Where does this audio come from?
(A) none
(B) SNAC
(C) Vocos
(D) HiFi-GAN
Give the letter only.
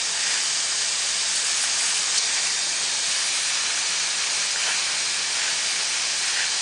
A